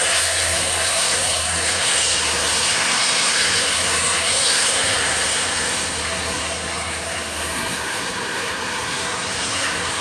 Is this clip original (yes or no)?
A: no